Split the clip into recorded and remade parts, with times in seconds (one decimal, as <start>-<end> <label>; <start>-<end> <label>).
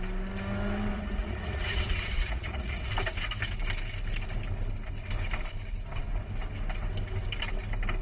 0.0-0.9 recorded; 0.9-2.9 remade; 2.9-8.0 recorded